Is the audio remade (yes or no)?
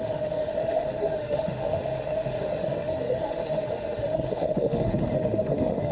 yes